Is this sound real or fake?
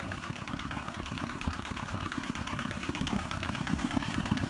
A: fake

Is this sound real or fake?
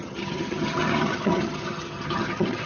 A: fake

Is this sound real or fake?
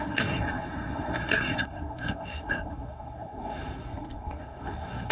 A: fake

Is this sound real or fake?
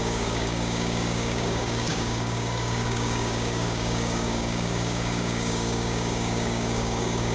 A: fake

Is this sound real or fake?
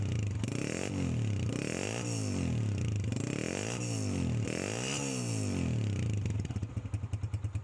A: real